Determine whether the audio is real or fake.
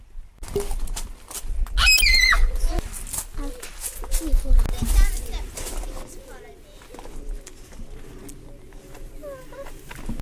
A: real